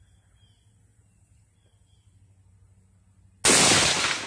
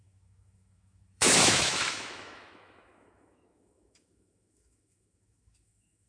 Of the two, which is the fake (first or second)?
second